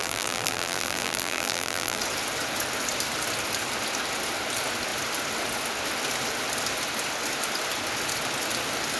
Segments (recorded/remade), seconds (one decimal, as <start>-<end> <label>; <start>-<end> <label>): 0.0-2.0 remade; 2.0-9.0 recorded